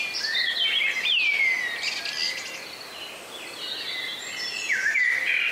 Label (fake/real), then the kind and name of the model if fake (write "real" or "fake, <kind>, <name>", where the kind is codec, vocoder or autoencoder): real